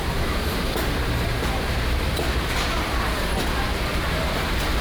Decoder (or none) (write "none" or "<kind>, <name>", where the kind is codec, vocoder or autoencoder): vocoder, BigVGAN v2